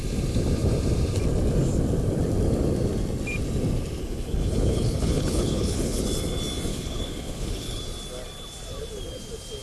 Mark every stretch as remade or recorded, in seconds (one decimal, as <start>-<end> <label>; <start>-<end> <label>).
0.0-4.0 recorded; 4.0-6.0 remade; 6.0-6.7 recorded; 6.7-7.8 remade; 7.8-9.6 recorded